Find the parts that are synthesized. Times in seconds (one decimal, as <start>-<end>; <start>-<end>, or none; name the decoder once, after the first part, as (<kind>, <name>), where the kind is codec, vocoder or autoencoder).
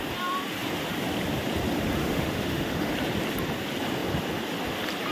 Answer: 2.0-2.9 (autoencoder, DAC-VAE)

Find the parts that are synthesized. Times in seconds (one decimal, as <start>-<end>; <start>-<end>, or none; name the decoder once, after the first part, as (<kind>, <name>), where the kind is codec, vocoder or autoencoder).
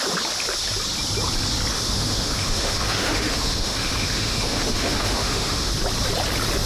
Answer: 1.7-5.7 (autoencoder, DAC-VAE)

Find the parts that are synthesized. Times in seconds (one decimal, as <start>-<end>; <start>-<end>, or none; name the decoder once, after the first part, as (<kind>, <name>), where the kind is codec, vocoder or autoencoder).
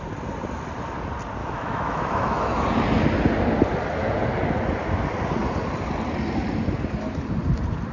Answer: 1.4-2.6 (autoencoder, DAC-VAE)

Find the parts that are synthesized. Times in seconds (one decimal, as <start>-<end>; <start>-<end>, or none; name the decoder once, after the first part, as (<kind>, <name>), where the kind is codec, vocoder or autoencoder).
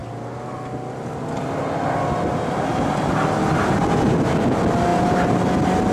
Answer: none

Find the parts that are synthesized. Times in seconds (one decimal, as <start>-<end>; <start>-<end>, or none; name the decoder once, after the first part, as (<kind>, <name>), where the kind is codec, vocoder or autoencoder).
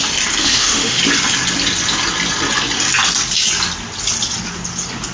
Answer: 0.4-1.0 (autoencoder, DAC-VAE)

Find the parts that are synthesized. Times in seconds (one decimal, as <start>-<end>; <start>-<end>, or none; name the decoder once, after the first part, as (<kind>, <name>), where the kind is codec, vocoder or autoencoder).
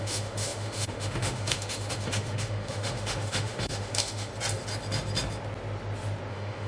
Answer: 0.0-4.3 (autoencoder, DAC-VAE); 6.3-6.7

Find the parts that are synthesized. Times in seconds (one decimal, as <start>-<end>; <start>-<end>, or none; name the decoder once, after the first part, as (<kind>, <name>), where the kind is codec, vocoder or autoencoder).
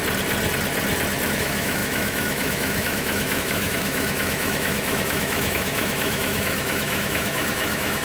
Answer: 1.3-8.0 (autoencoder, DAC-VAE)